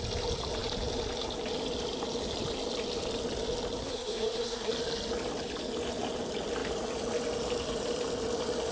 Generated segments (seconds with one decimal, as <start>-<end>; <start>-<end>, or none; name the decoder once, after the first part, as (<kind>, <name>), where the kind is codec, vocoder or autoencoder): 3.8-4.7 (codec, SNAC)